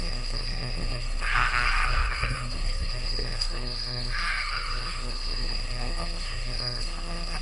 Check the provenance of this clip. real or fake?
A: fake